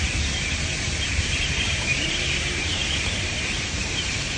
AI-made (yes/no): yes